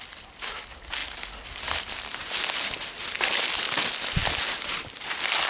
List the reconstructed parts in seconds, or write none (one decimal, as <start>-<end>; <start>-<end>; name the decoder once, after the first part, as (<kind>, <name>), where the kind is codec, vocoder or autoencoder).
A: none